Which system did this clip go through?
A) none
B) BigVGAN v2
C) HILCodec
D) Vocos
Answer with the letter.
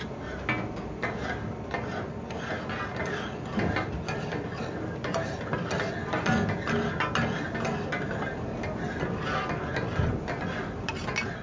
A